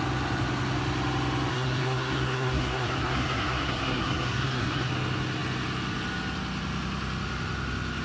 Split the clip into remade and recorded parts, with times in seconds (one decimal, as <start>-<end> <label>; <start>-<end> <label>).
0.0-1.5 recorded; 1.5-4.9 remade; 4.9-8.0 recorded